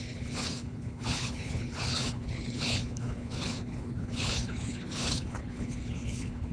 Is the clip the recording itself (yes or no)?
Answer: no